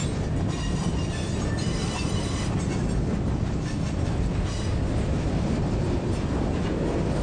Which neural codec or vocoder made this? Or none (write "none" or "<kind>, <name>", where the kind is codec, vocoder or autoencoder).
vocoder, BigVGAN v2